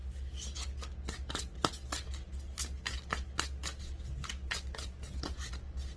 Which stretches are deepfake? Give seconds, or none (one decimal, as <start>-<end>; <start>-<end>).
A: none